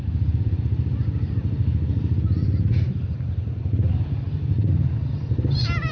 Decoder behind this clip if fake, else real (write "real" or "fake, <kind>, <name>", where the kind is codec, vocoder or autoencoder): fake, vocoder, BigVGAN v2